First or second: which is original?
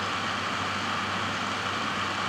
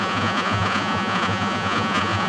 first